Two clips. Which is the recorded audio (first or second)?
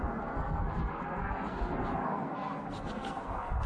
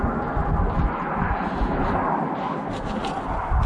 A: second